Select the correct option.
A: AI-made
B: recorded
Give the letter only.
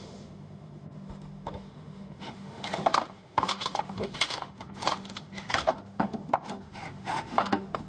A